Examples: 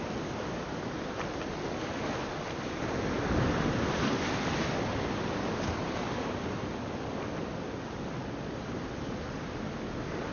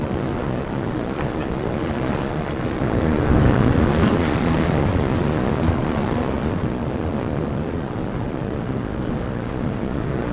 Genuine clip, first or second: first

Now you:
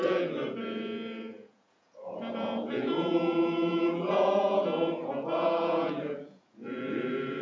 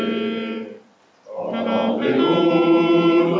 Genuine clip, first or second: second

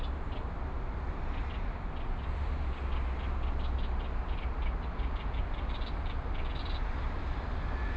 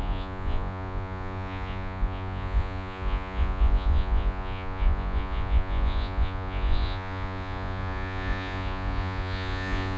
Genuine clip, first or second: first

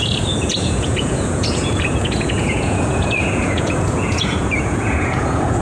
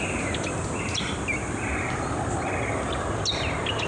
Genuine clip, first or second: second